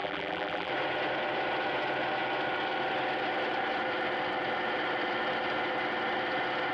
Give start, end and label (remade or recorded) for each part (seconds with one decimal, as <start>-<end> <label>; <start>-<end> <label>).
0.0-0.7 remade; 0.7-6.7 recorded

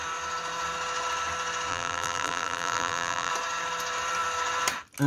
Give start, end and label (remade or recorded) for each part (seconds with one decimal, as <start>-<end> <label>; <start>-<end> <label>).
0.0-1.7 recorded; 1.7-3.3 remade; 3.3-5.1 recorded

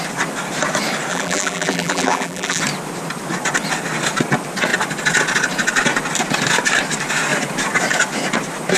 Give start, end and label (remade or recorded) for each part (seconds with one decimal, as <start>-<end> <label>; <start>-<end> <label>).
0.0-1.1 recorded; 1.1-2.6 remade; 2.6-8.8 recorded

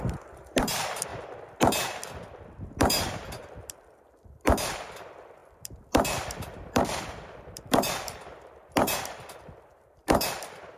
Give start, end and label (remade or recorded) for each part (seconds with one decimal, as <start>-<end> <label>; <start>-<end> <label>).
0.0-1.1 remade; 1.1-2.8 recorded; 2.8-10.8 remade

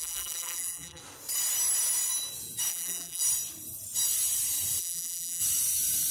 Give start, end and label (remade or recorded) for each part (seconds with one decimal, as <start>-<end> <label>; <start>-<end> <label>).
0.0-1.0 remade; 1.0-2.7 recorded; 2.7-3.2 remade; 3.2-4.8 recorded; 4.8-5.4 remade; 5.4-6.1 recorded

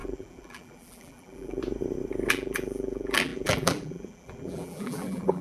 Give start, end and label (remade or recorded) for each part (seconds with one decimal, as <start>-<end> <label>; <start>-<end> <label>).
0.0-1.6 remade; 1.6-2.3 recorded; 2.3-5.4 remade

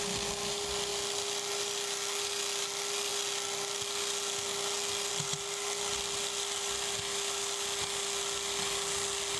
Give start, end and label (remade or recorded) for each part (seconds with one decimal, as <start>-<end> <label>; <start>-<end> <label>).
0.0-9.4 recorded